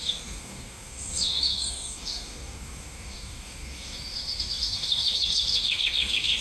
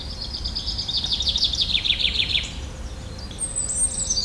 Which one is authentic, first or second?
second